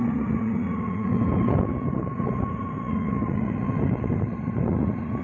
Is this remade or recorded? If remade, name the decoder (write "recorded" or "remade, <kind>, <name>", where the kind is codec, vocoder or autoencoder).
remade, vocoder, Vocos